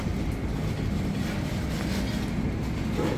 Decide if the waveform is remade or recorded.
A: recorded